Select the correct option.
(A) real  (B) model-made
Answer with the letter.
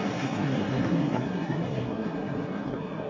B